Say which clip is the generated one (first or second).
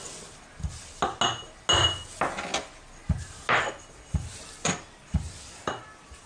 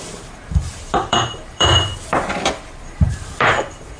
second